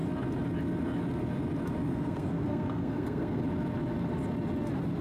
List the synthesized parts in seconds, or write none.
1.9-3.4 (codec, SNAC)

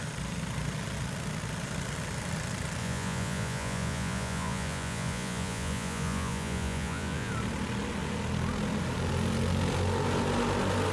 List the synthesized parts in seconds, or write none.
2.8-7.3 (vocoder, Vocos)

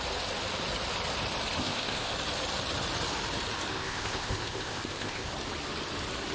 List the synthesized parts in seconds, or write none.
1.6-2.1 (codec, ZipCodec); 3.7-5.3

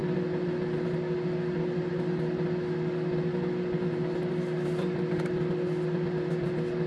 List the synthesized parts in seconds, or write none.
none

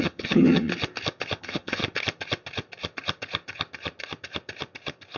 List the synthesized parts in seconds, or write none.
0.0-0.7 (vocoder, HiFi-GAN); 1.4-1.8

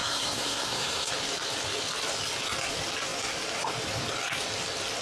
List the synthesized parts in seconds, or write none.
0.0-1.1 (codec, SNAC)